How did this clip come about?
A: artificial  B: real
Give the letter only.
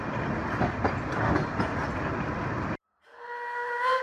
B